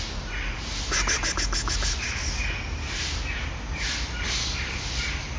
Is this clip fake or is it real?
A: real